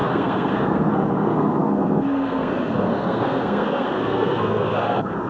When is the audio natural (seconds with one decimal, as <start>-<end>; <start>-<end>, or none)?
none